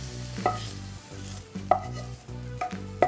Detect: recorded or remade recorded